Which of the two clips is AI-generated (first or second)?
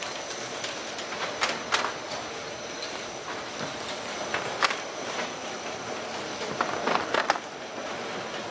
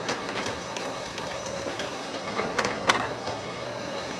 second